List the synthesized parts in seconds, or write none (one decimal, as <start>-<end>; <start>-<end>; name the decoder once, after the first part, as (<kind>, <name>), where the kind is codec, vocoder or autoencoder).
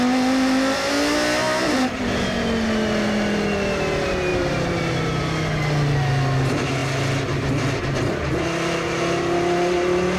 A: 4.3-4.9 (vocoder, BigVGAN v2)